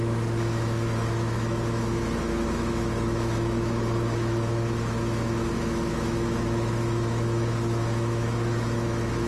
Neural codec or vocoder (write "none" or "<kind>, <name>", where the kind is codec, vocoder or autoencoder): autoencoder, DAC-VAE